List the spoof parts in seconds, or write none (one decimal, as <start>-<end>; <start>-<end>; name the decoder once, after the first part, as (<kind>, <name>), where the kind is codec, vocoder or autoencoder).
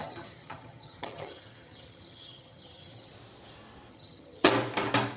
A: 0.0-3.1 (vocoder, HiFi-GAN); 3.9-4.5